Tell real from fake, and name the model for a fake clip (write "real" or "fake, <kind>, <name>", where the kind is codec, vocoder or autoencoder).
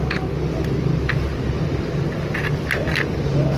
real